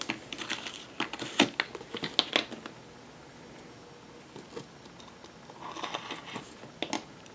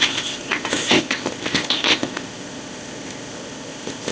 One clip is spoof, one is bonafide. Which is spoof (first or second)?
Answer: second